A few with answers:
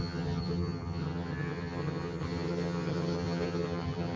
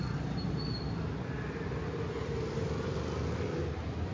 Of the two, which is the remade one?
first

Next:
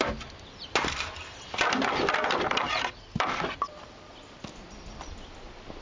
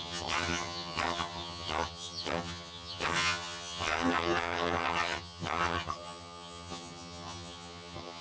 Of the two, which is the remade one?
second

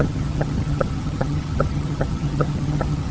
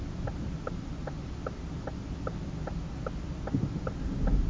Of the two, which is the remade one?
first